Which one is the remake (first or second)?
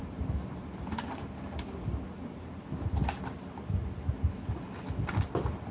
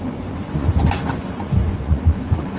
second